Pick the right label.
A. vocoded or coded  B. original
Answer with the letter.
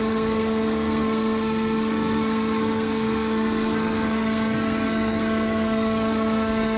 A